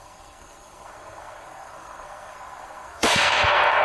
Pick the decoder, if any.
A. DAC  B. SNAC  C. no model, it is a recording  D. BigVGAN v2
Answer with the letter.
B